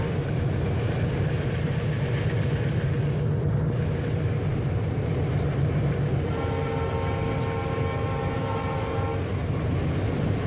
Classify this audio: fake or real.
real